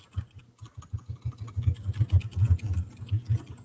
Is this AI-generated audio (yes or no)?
no